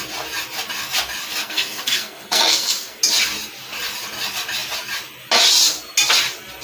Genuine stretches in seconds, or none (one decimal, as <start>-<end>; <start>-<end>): 0.0-1.4; 3.0-6.6